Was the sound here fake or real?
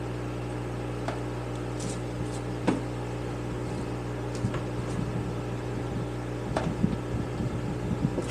real